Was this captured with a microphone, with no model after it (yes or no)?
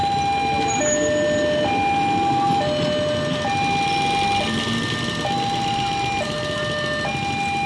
yes